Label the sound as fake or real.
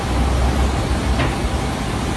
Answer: real